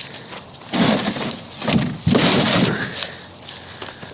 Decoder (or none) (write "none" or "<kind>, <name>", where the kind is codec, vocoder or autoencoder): none